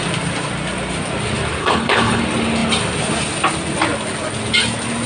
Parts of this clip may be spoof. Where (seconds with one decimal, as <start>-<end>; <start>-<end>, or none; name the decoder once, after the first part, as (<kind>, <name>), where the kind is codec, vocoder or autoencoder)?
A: 1.6-2.2 (codec, HILCodec)